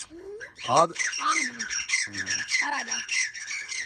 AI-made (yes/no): yes